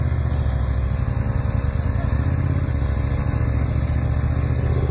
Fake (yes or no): no